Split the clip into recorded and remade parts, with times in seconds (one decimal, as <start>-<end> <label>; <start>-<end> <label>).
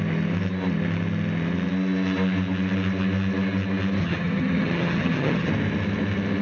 0.0-4.0 recorded; 4.0-5.5 remade; 5.5-6.4 recorded